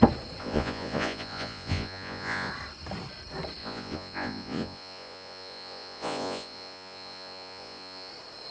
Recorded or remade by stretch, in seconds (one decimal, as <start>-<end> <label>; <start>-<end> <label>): 0.0-0.4 recorded; 0.4-2.5 remade; 2.5-3.6 recorded; 3.6-8.1 remade; 8.1-8.5 recorded